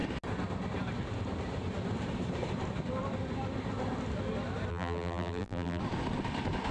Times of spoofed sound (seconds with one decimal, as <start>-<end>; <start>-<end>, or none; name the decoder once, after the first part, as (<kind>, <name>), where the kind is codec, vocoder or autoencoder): 4.7-5.8 (vocoder, BigVGAN v2)